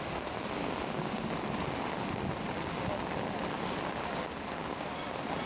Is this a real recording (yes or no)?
yes